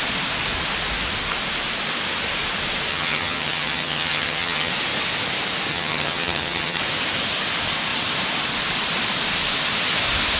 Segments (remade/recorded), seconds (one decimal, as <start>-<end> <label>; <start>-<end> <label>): 0.0-2.9 recorded; 2.9-4.7 remade; 4.7-5.7 recorded; 5.7-6.8 remade; 6.8-10.4 recorded